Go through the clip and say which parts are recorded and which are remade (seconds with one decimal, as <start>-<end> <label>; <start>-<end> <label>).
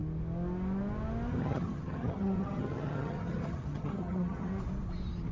0.0-1.3 recorded; 1.3-4.5 remade; 4.5-5.3 recorded